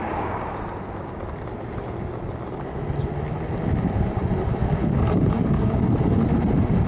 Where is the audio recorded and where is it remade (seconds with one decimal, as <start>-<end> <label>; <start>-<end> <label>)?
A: 0.0-0.6 remade; 0.6-4.6 recorded; 4.6-5.9 remade; 5.9-6.9 recorded

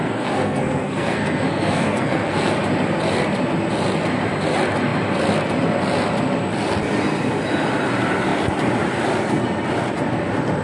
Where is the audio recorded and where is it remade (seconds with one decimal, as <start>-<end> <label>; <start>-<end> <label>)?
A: 0.0-2.5 remade; 2.5-10.6 recorded

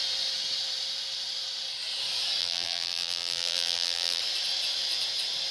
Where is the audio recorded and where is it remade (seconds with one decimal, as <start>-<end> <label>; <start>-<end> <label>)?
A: 0.0-2.4 recorded; 2.4-4.2 remade; 4.2-5.5 recorded

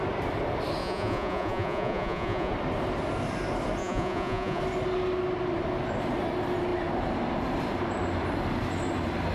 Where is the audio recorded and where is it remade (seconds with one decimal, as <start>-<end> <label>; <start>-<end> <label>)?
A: 0.0-0.8 recorded; 0.8-2.5 remade; 2.5-3.8 recorded; 3.8-4.6 remade; 4.6-9.3 recorded

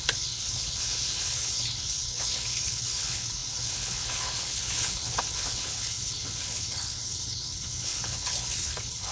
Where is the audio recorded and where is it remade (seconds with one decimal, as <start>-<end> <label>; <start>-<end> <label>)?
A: 0.0-9.1 remade

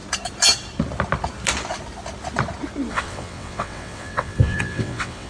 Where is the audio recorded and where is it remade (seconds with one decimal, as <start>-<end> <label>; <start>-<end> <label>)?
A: 0.0-2.9 recorded; 2.9-5.3 remade